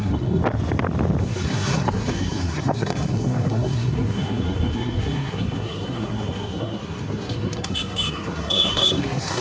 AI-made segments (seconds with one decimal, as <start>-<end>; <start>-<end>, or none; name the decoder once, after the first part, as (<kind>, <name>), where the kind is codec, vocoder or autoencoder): 0.0-0.4 (codec, SNAC); 1.2-9.4